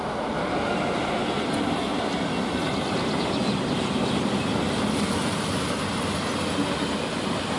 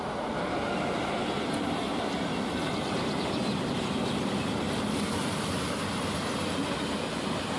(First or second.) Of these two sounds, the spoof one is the second